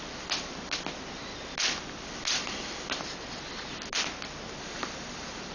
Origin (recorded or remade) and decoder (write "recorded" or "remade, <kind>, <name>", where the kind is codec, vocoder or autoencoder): recorded